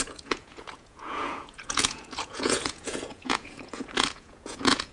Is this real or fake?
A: fake